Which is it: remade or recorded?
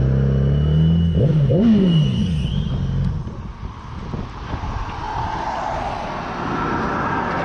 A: recorded